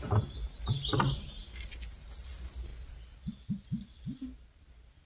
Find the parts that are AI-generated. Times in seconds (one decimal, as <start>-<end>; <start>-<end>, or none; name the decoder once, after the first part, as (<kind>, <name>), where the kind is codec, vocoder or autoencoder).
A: none